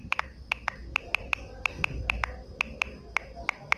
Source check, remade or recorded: recorded